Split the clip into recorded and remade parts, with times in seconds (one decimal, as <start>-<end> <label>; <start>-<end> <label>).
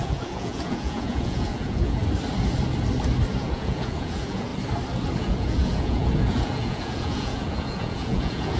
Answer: 0.0-2.0 remade; 2.0-3.4 recorded; 3.4-4.5 remade; 4.5-5.2 recorded; 5.2-8.6 remade